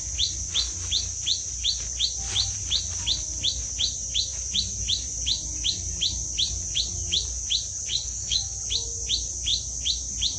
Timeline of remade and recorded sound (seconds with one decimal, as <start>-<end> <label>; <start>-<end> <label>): 0.0-7.9 recorded; 7.9-8.6 remade; 8.6-10.4 recorded